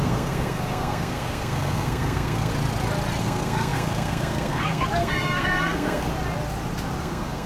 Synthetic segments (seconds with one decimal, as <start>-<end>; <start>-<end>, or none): 0.0-2.5; 3.2-6.1; 7.0-7.5